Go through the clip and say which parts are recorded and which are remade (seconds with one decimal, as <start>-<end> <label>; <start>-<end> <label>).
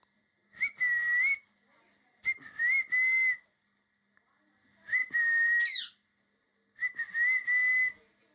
0.0-8.3 recorded